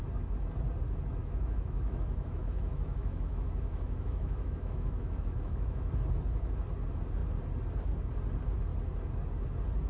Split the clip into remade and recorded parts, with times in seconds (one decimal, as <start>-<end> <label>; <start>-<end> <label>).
0.0-1.2 recorded; 1.2-5.9 remade; 5.9-9.9 recorded